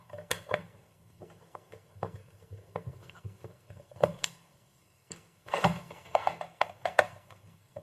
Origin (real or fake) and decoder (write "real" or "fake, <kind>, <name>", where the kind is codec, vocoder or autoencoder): fake, codec, SNAC